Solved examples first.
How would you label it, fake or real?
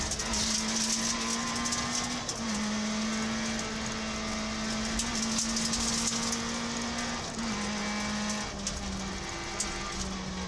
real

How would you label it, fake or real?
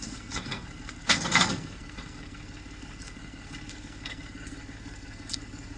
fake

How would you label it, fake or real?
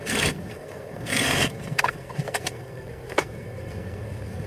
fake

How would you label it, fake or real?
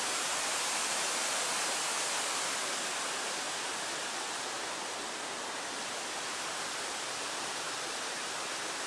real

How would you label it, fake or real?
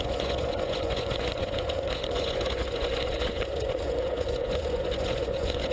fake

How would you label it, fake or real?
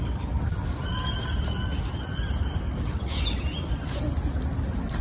real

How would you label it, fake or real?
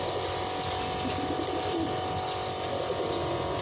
real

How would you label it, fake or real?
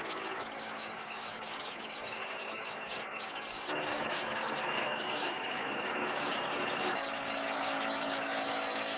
fake